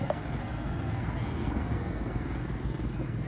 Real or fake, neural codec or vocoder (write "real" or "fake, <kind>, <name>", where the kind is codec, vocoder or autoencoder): fake, codec, SNAC